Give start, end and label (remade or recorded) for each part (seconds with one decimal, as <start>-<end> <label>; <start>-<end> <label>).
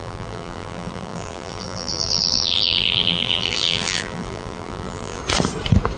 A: 0.0-5.2 remade; 5.2-6.0 recorded